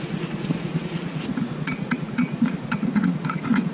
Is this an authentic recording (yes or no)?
no